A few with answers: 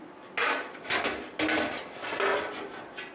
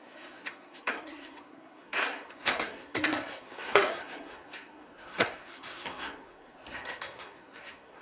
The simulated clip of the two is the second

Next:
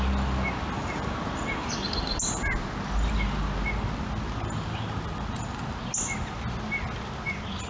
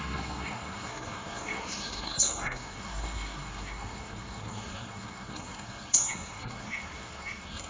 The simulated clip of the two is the second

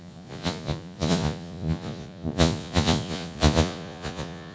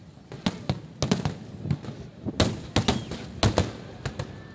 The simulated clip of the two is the first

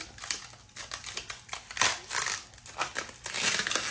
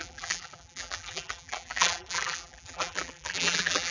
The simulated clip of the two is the second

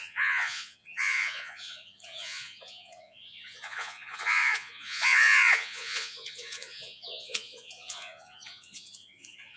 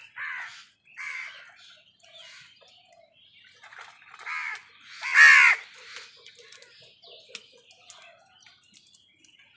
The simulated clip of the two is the first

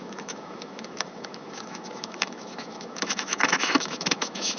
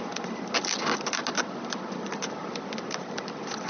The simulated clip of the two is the first